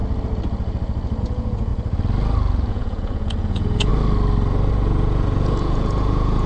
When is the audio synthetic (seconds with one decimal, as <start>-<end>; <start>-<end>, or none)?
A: 1.2-1.7; 2.7-3.9; 4.7-6.5